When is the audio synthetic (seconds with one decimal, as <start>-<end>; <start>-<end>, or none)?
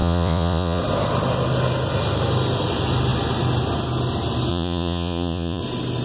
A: 0.0-0.8; 4.5-5.6